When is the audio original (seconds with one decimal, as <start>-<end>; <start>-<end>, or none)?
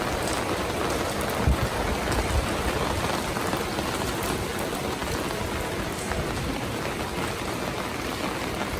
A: 0.0-8.8